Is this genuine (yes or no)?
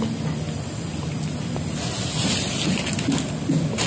yes